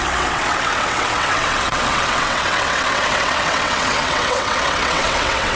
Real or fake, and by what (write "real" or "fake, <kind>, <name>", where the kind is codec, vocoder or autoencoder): fake, vocoder, WaveNeXt